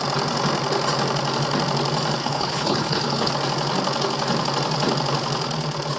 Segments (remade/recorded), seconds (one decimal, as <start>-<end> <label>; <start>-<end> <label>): 0.0-2.2 recorded; 2.2-3.3 remade; 3.3-6.0 recorded